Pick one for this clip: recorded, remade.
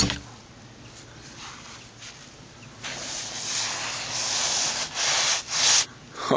recorded